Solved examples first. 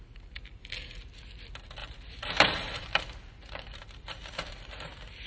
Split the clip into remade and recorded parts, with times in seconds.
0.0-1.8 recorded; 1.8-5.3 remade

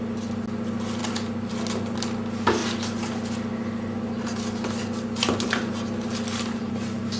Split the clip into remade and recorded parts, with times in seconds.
0.0-7.2 recorded

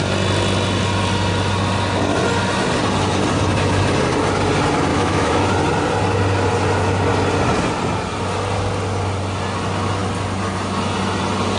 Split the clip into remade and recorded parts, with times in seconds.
0.0-4.9 recorded; 4.9-5.5 remade; 5.5-11.6 recorded

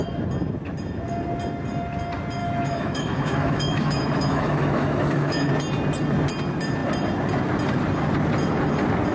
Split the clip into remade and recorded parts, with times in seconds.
0.0-2.4 recorded; 2.4-5.5 remade; 5.5-9.1 recorded

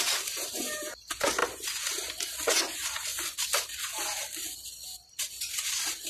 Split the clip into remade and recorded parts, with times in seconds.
0.0-1.4 remade; 1.4-2.6 recorded; 2.6-3.1 remade; 3.1-6.1 recorded

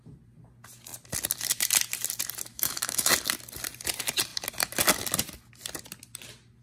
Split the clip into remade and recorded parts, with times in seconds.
0.0-2.5 recorded; 2.5-3.1 remade; 3.1-6.6 recorded

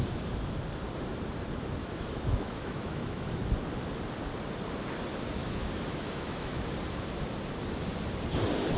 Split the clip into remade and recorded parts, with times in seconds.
0.0-1.8 recorded; 1.8-3.4 remade; 3.4-5.4 recorded; 5.4-6.5 remade; 6.5-8.8 recorded